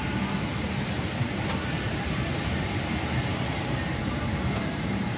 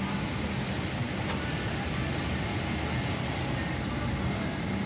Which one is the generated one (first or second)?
first